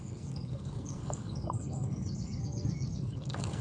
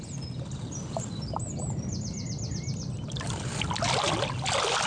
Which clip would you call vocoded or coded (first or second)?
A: first